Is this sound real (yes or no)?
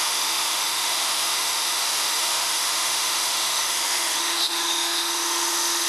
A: no